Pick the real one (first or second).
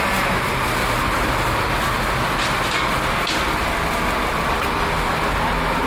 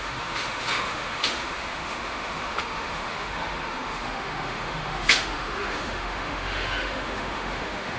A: first